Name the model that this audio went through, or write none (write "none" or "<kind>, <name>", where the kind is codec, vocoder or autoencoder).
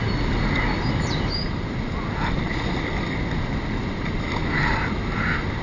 none